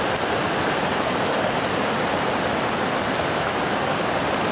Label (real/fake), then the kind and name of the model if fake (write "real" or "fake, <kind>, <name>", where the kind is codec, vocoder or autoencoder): real